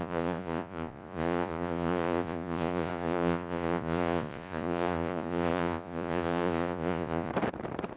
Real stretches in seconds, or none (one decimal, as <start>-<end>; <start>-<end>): 7.3-8.0